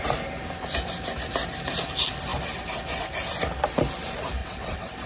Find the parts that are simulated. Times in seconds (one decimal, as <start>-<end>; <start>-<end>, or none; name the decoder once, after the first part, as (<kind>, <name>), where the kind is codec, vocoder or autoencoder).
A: 4.4-5.1 (vocoder, WaveNeXt)